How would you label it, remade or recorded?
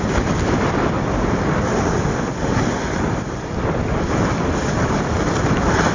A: recorded